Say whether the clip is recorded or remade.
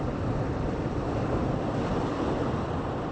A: recorded